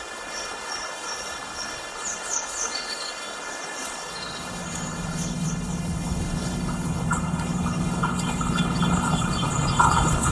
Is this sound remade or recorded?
remade